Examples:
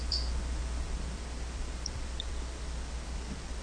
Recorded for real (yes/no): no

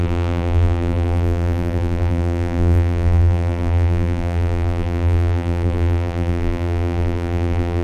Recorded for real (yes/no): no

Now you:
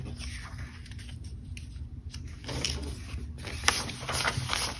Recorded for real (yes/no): yes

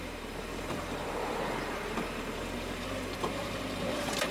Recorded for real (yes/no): no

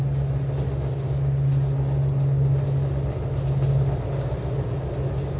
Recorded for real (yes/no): yes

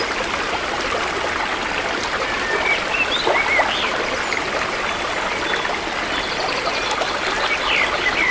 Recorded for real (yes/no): yes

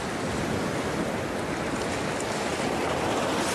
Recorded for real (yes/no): yes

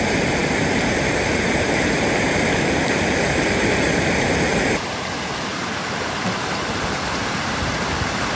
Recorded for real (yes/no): no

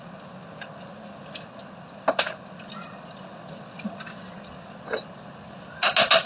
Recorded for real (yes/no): yes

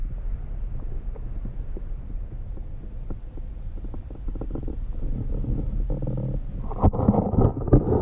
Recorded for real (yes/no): yes